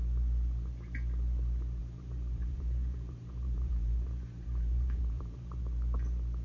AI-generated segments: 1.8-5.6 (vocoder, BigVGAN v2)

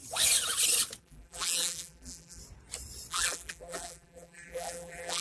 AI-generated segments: 1.0-2.4 (vocoder, BigVGAN v2); 3.1-5.2